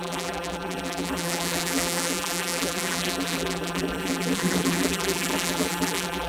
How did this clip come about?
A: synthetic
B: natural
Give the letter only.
A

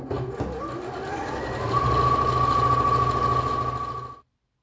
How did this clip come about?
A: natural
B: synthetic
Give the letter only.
A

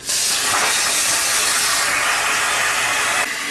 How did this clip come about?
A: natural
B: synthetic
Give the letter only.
A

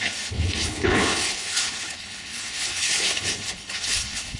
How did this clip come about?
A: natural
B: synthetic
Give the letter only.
B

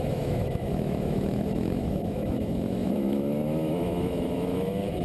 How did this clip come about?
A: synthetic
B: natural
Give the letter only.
A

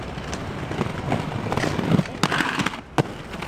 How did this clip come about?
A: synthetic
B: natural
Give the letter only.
B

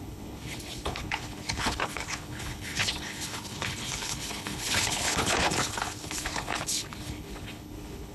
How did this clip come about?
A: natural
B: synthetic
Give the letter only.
B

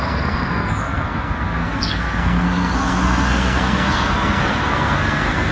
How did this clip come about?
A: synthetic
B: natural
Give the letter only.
A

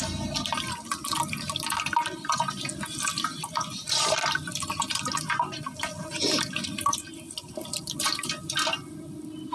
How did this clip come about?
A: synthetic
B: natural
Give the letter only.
B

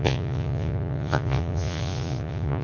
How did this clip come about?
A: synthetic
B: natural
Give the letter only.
A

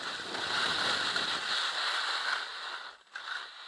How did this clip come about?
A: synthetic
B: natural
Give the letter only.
B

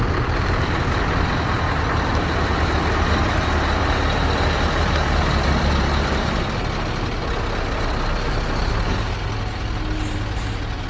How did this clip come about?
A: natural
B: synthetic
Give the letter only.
A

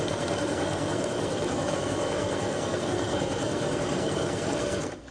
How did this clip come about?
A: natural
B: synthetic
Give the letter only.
B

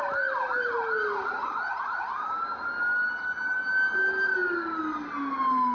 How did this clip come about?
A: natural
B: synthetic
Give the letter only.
A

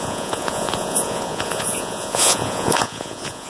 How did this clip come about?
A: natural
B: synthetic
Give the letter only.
B